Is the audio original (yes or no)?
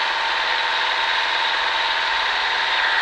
yes